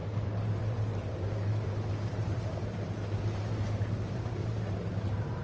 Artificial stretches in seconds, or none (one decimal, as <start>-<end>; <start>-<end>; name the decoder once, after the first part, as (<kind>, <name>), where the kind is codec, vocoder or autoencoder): 0.0-5.4 (vocoder, BigVGAN v2)